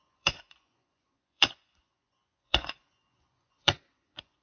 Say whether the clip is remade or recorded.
remade